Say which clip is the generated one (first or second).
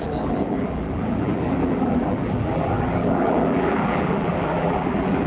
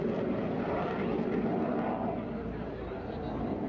first